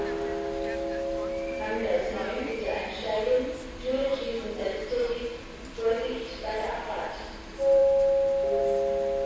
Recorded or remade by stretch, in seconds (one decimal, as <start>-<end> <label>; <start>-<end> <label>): 0.0-9.3 recorded